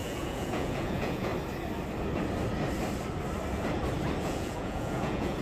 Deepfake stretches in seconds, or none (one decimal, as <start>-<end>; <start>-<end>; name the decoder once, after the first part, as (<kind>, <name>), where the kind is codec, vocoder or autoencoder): 0.0-1.3 (vocoder, Vocos); 4.2-5.4